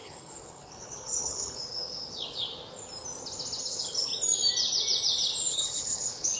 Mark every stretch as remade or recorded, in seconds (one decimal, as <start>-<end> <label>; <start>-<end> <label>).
0.0-2.5 remade; 2.5-3.6 recorded; 3.6-4.1 remade; 4.1-5.5 recorded; 5.5-6.4 remade

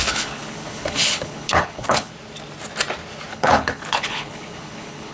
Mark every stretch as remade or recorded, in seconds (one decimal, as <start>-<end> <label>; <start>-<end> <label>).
0.0-2.1 remade; 2.1-3.3 recorded; 3.3-5.1 remade